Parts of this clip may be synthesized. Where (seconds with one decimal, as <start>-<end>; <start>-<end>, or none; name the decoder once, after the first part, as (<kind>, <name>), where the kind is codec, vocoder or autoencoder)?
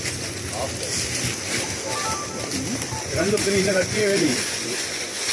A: 0.0-0.4 (vocoder, Vocos); 3.0-5.3